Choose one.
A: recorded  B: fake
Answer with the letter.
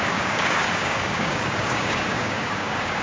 B